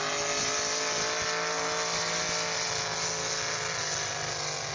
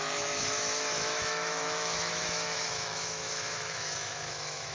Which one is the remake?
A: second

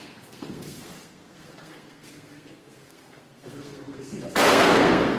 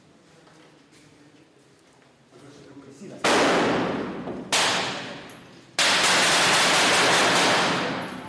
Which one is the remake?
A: first